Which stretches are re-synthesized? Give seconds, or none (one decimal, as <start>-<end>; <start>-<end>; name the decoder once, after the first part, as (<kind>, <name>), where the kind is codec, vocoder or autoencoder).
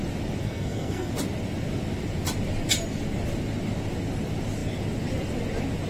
0.4-1.1 (codec, SNAC)